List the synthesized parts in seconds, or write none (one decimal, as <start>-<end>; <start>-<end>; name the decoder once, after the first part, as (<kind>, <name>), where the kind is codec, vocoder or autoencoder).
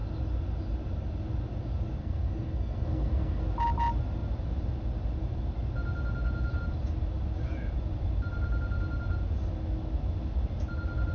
2.0-3.4 (codec, SNAC)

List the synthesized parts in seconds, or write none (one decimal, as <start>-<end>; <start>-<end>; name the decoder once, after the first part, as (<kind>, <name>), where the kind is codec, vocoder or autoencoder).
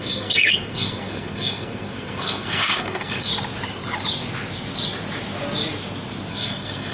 0.0-3.3 (codec, SNAC); 6.3-6.9